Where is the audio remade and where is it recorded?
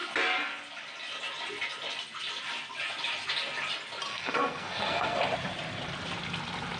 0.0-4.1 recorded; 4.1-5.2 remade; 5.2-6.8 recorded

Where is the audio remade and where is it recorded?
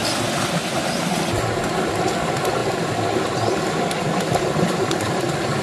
0.0-5.6 recorded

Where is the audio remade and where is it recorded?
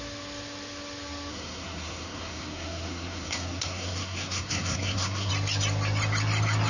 0.0-1.3 recorded; 1.3-5.3 remade; 5.3-6.7 recorded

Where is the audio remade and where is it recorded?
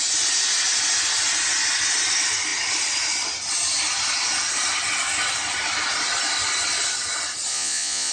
0.0-7.5 recorded; 7.5-8.1 remade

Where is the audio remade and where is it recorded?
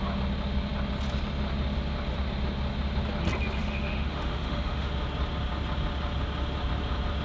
0.0-3.6 recorded; 3.6-4.9 remade; 4.9-7.2 recorded